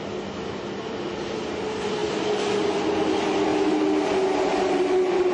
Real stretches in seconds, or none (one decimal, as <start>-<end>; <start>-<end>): 0.0-5.3